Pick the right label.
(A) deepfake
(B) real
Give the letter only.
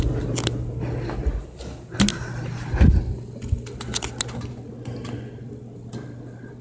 B